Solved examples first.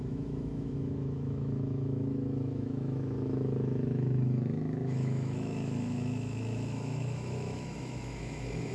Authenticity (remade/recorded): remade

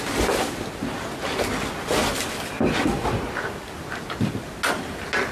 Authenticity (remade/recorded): recorded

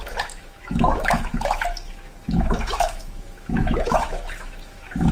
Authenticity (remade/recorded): remade